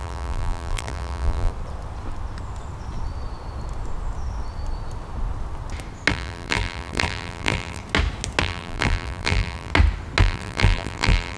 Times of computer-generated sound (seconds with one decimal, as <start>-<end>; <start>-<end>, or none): 0.0-1.5; 6.1-7.8; 8.4-9.7; 10.2-11.4